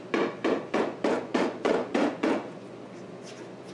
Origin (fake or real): fake